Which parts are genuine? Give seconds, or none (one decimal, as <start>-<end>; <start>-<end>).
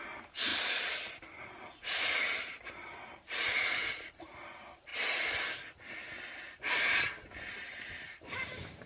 0.5-1.4; 4.9-6.9